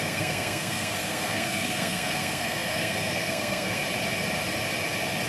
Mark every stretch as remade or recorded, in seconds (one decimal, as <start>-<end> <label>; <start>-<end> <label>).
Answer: 0.0-3.8 remade; 3.8-5.3 recorded